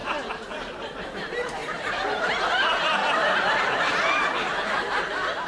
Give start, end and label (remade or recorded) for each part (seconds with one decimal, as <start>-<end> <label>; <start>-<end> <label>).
0.0-5.5 recorded